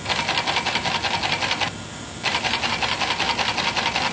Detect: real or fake real